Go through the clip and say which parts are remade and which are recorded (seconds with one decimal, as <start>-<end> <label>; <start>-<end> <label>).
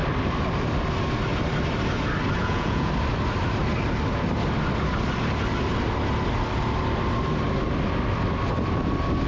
0.0-2.4 recorded; 2.4-2.9 remade; 2.9-9.3 recorded